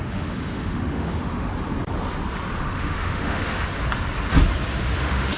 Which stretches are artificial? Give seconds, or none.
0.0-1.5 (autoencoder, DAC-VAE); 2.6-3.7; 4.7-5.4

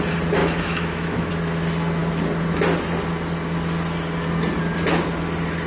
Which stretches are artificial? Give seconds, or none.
0.4-1.3 (autoencoder, DAC-VAE)

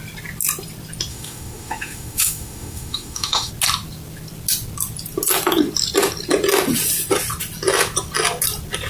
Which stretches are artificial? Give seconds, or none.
1.1-3.5 (autoencoder, DAC-VAE)

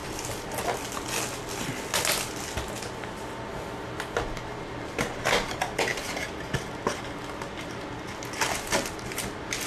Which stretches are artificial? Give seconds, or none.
none